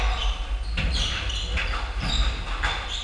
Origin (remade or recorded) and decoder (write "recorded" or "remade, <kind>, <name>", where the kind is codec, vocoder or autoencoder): recorded